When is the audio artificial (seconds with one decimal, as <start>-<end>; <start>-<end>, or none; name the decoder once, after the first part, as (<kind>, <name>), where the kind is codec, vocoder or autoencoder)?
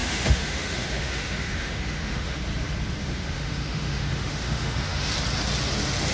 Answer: 0.0-2.4 (autoencoder, DAC-VAE); 3.0-5.1